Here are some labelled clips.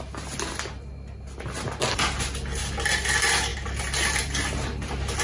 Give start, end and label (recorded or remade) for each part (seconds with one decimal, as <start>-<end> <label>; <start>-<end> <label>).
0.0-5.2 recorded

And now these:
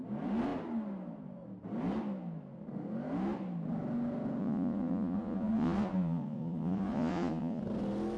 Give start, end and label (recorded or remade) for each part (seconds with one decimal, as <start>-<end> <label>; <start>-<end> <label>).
0.0-4.4 recorded; 4.4-7.6 remade; 7.6-8.2 recorded

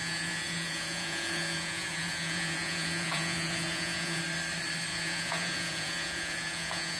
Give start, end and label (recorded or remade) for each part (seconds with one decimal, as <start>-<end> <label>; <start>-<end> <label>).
0.0-4.2 remade; 4.2-4.9 recorded; 4.9-7.0 remade